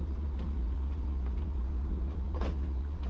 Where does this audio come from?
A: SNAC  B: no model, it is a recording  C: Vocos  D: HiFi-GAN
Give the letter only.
C